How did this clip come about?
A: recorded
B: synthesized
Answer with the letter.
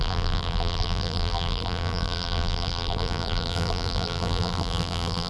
B